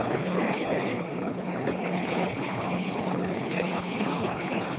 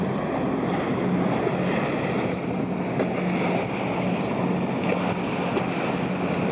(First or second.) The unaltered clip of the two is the second